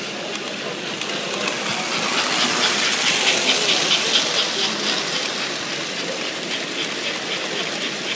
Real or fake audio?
real